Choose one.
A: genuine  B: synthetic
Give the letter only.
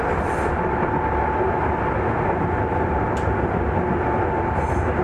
A